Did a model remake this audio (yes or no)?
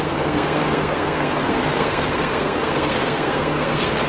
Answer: yes